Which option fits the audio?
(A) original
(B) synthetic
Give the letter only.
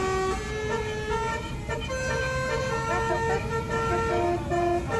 A